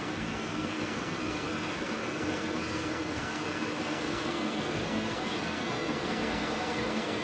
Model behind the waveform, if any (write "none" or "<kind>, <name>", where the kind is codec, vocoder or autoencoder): codec, SNAC